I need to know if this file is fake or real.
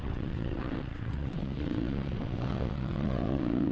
fake